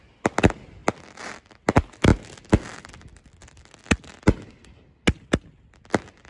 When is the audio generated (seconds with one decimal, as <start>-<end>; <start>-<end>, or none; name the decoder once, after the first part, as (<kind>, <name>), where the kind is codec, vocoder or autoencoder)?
0.8-1.5 (vocoder, BigVGAN v2)

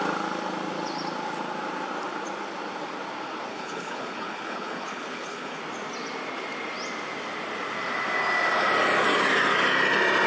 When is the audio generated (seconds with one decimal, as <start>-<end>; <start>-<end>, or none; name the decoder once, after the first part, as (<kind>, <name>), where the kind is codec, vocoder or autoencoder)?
3.5-5.6 (codec, HILCodec)

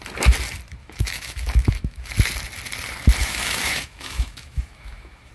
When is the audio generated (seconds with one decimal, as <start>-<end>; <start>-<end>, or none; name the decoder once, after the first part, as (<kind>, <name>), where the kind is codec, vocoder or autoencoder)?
0.8-2.1 (autoencoder, DAC-VAE); 3.2-5.3

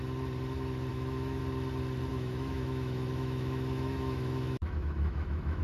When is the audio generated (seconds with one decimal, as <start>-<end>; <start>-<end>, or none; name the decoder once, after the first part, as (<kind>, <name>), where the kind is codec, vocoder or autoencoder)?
0.9-1.4 (autoencoder, DAC-VAE); 2.1-5.6

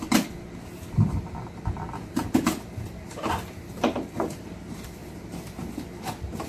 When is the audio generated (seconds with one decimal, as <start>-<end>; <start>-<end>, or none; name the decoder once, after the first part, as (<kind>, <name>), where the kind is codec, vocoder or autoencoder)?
5.0-5.7 (vocoder, BigVGAN v2)